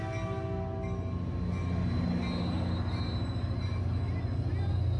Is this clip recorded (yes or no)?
yes